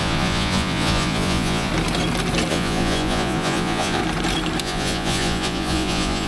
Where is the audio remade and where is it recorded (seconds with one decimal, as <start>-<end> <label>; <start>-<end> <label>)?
0.0-1.7 remade; 1.7-2.5 recorded; 2.5-4.0 remade; 4.0-4.6 recorded; 4.6-6.3 remade